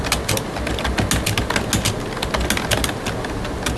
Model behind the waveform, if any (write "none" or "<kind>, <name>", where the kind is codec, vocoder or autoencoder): none